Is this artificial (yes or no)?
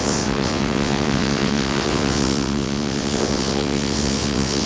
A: yes